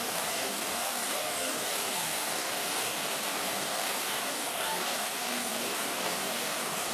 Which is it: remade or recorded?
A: remade